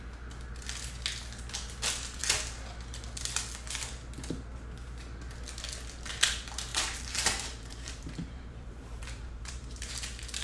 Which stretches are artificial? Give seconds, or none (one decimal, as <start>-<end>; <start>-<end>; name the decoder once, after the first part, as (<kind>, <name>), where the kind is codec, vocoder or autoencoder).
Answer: 6.7-9.9 (vocoder, BigVGAN v2)